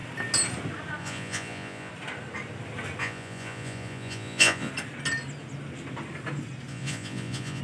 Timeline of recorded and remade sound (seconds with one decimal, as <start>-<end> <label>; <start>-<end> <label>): 0.0-1.0 recorded; 1.0-1.9 remade; 1.9-3.0 recorded; 3.0-4.7 remade; 4.7-6.7 recorded; 6.7-7.6 remade